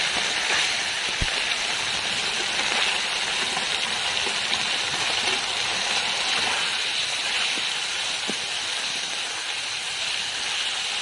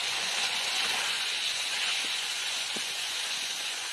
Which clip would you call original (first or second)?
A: first